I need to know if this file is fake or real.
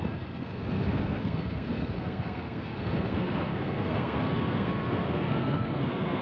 fake